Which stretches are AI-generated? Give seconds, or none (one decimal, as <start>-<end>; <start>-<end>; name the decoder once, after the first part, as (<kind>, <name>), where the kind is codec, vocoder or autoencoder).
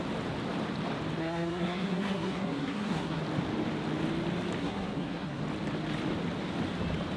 1.2-3.2 (codec, SNAC); 4.6-5.4